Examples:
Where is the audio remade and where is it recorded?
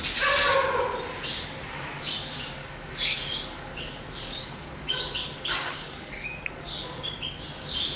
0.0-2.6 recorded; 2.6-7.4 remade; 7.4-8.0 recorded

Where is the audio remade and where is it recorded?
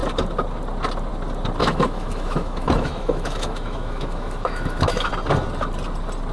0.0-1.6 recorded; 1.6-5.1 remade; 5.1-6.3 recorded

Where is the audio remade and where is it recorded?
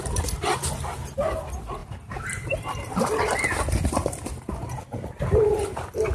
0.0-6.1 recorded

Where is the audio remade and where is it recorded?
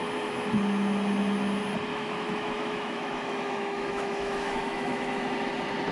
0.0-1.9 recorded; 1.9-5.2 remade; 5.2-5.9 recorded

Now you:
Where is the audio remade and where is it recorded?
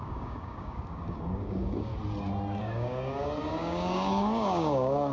0.0-1.9 remade; 1.9-2.6 recorded; 2.6-5.1 remade